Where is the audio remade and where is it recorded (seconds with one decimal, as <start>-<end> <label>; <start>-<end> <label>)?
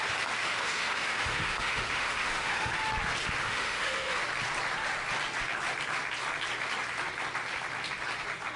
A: 0.0-0.4 recorded; 0.4-2.8 remade; 2.8-3.4 recorded; 3.4-4.2 remade; 4.2-8.6 recorded